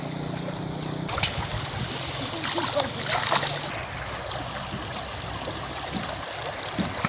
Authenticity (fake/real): real